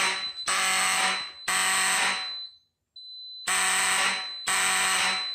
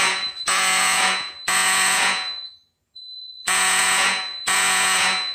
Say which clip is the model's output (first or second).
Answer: second